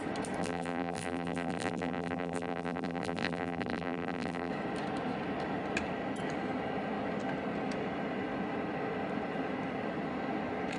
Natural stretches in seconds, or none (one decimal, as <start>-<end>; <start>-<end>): 0.0-0.4; 4.5-10.8